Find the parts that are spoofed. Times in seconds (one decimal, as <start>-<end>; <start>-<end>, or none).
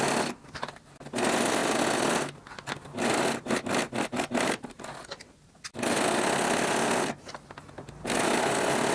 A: none